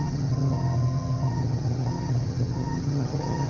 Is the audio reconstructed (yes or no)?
yes